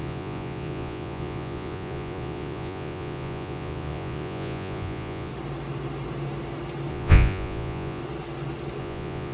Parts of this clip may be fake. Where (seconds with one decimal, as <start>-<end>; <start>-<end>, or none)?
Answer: 0.0-5.3; 6.9-8.0; 8.8-9.3

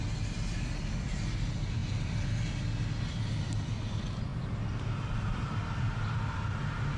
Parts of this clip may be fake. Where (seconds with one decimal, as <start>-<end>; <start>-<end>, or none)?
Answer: 0.0-7.0